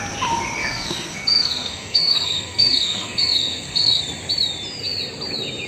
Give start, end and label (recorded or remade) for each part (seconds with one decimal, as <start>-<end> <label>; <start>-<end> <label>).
0.0-0.6 recorded; 0.6-4.0 remade; 4.0-5.7 recorded